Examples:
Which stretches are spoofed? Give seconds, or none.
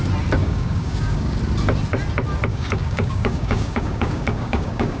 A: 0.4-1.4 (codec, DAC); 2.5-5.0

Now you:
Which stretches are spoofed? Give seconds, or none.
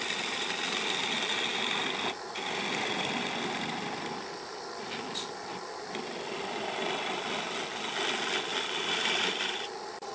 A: none